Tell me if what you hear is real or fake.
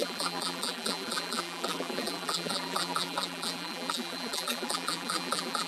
fake